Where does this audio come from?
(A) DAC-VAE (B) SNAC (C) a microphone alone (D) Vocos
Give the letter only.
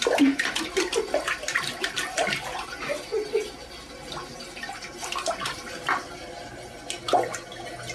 C